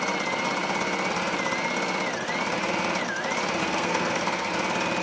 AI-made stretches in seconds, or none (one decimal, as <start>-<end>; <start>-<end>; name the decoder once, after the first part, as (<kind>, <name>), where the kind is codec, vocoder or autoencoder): 3.6-4.5 (codec, SNAC)